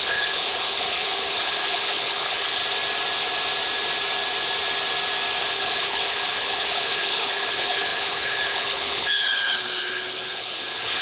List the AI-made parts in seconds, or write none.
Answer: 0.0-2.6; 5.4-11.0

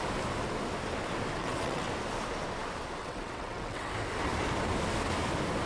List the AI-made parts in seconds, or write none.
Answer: 1.4-1.9; 3.0-3.9

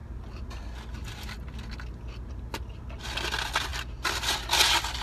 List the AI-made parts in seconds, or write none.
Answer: none

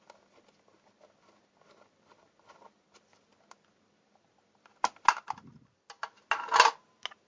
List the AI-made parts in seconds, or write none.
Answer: none

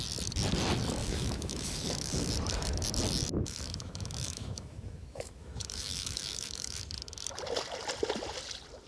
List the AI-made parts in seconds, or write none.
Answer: 1.0-2.3; 3.4-6.8